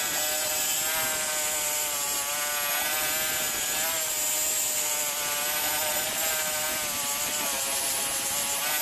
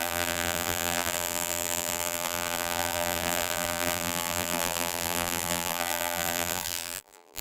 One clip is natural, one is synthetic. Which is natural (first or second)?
first